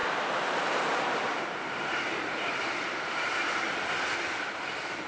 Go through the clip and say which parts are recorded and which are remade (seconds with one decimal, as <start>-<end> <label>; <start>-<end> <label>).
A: 0.0-3.1 remade; 3.1-5.1 recorded